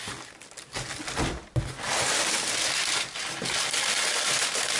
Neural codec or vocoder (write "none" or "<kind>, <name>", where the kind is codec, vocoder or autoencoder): none